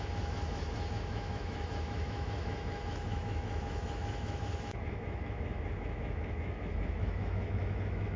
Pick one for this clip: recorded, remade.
remade